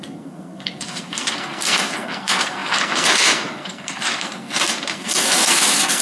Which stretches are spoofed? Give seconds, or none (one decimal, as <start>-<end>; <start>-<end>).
0.0-6.0